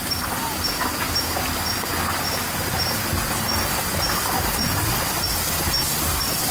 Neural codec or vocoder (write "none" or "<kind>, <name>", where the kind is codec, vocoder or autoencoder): none